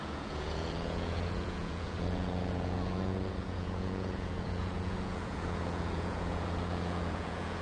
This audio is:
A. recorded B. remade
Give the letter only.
B